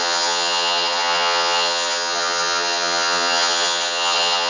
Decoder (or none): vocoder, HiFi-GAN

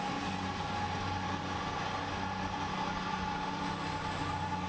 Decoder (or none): none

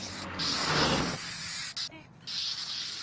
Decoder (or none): none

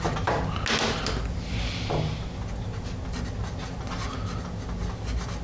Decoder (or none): none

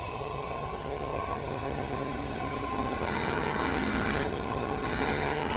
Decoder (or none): vocoder, HiFi-GAN